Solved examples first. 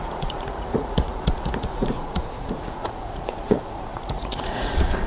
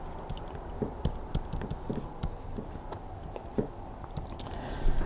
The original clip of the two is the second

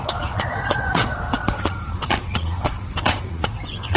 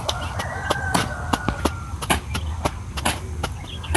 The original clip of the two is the second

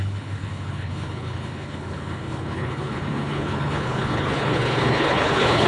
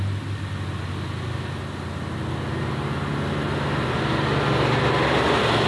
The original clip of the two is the second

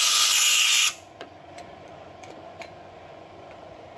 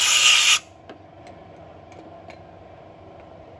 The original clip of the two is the second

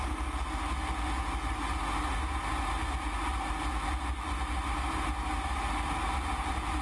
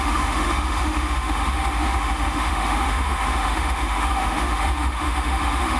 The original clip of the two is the first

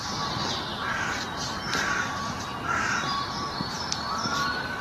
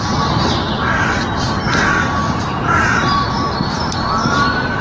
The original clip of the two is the second